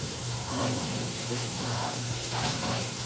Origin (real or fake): fake